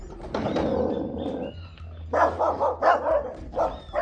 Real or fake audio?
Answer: real